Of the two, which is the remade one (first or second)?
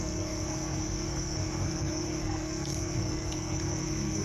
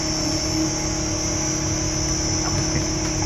first